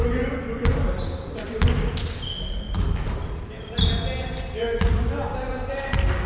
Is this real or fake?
real